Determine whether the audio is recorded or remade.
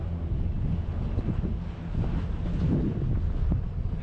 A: recorded